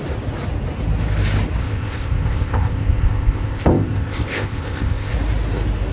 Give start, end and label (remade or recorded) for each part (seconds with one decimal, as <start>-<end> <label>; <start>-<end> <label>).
0.0-1.6 recorded; 1.6-5.1 remade; 5.1-5.9 recorded